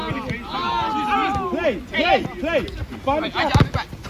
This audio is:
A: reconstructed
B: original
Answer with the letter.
B